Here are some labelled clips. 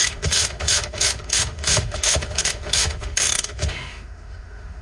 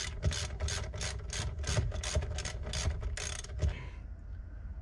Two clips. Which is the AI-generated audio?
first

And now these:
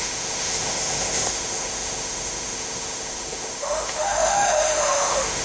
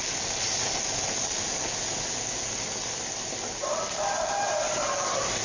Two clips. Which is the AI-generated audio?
first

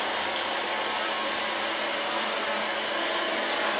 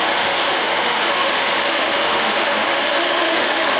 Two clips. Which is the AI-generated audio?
second